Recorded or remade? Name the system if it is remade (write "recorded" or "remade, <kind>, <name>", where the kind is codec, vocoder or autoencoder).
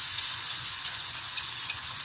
remade, vocoder, Vocos